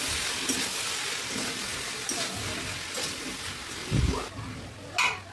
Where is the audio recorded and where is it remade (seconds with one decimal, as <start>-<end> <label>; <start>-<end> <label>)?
0.0-5.3 recorded